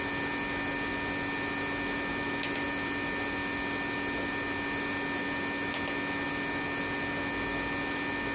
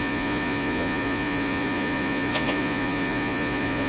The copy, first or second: second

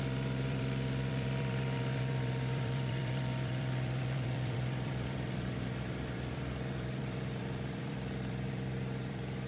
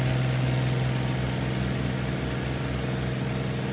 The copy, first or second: first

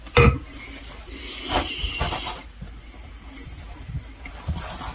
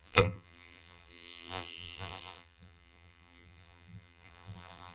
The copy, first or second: second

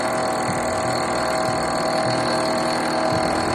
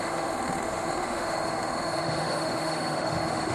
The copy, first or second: second